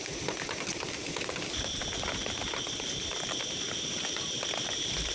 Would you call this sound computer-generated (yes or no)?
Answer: no